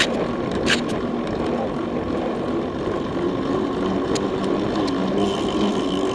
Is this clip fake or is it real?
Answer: real